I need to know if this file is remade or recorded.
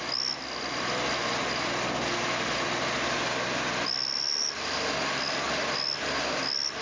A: recorded